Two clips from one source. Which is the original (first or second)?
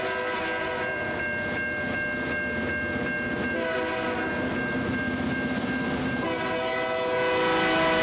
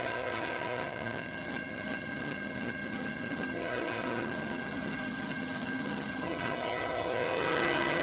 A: first